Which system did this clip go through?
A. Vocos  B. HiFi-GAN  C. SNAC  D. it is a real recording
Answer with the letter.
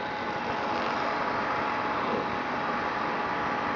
D